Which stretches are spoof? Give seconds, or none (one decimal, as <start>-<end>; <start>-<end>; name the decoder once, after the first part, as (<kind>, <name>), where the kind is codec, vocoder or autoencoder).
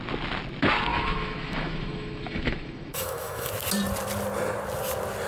0.9-3.5 (autoencoder, DAC-VAE)